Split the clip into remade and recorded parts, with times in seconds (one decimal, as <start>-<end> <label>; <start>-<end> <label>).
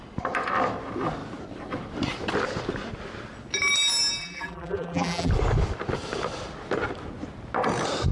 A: 0.0-4.2 recorded; 4.2-5.3 remade; 5.3-8.1 recorded